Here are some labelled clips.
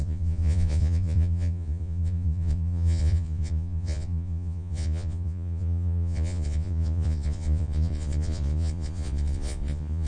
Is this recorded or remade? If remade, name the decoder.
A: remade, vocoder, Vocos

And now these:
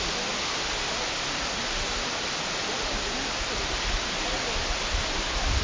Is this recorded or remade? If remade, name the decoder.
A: recorded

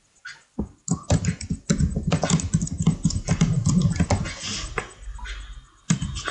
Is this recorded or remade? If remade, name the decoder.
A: recorded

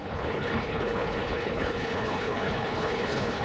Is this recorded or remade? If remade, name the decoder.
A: remade, codec, HILCodec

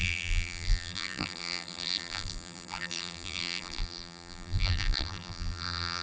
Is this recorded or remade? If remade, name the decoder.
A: remade, vocoder, BigVGAN v2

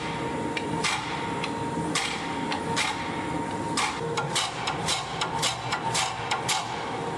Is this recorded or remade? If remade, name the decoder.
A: recorded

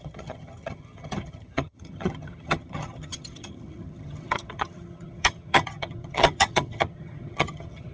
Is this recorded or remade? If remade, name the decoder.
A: remade, vocoder, HiFi-GAN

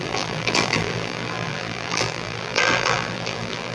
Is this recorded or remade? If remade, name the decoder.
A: remade, vocoder, BigVGAN v2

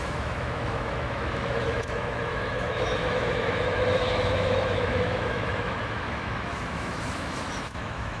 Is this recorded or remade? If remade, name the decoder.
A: remade, autoencoder, DAC-VAE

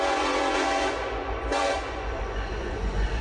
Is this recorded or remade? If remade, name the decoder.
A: remade, vocoder, Vocos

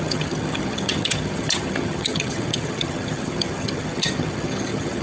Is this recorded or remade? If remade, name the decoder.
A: remade, vocoder, HiFi-GAN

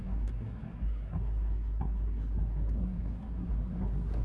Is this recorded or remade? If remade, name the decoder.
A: remade, codec, SNAC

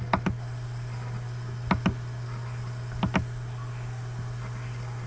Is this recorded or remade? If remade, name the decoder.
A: recorded